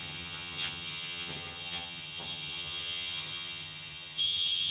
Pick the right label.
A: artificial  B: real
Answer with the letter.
A